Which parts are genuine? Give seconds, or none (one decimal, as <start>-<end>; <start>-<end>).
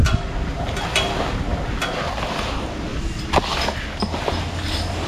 0.0-5.1